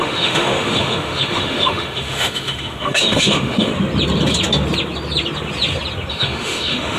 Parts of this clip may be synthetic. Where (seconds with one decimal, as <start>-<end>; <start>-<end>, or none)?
0.0-3.7; 6.1-7.0